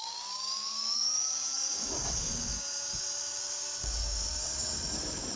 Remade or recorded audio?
remade